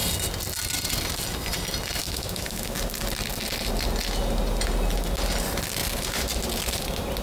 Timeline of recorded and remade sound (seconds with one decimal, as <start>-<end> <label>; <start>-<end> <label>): 0.0-2.0 recorded; 2.0-2.8 remade; 2.8-7.2 recorded